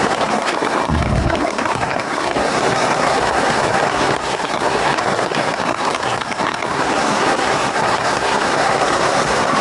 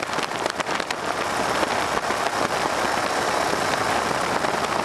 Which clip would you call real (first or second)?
second